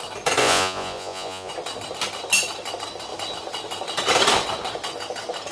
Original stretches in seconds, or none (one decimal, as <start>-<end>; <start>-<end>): 0.0-0.4; 1.5-5.5